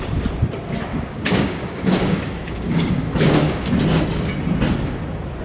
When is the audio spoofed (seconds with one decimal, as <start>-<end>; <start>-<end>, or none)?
0.9-3.7